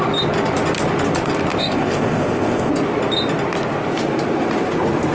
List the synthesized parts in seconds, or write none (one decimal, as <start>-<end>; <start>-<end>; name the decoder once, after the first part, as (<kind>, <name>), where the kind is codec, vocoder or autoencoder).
1.5-2.7 (codec, ZipCodec)